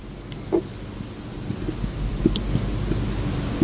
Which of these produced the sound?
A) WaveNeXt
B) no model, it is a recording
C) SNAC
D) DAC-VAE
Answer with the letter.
B